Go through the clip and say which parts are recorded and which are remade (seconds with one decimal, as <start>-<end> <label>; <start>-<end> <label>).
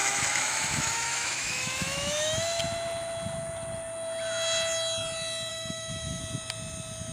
0.0-2.6 remade; 2.6-5.5 recorded; 5.5-6.2 remade; 6.2-7.1 recorded